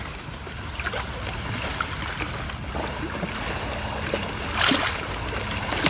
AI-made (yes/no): no